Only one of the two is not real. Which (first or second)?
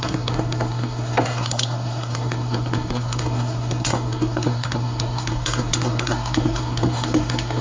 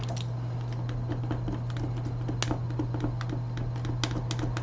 first